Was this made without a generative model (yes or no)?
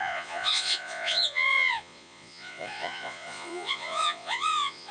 no